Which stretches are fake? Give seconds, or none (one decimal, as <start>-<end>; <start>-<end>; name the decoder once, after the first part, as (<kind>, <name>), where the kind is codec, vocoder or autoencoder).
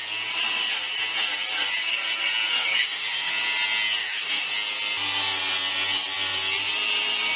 2.5-3.3 (autoencoder, DAC-VAE); 4.0-4.5